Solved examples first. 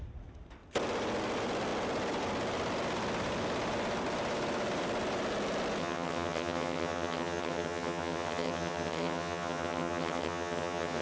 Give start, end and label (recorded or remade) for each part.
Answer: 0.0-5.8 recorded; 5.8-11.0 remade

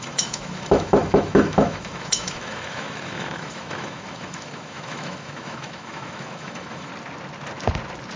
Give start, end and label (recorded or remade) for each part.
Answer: 0.0-6.9 remade; 6.9-8.2 recorded